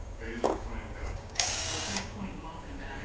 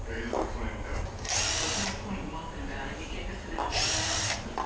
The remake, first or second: first